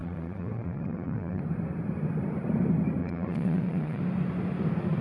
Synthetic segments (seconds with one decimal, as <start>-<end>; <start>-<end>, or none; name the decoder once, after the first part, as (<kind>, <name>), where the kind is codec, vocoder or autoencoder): 0.0-1.4 (vocoder, Vocos); 3.0-4.0